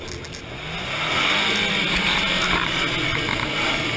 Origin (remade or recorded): recorded